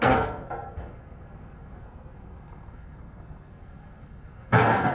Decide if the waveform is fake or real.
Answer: fake